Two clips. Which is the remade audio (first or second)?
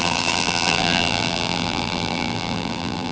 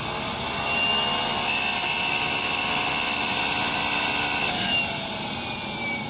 first